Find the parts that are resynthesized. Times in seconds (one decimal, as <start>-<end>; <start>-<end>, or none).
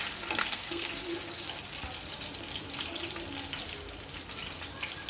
0.4-0.9